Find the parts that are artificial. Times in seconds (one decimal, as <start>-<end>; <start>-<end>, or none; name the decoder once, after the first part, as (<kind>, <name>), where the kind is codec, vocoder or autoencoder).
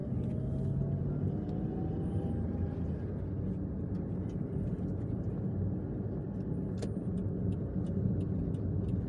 none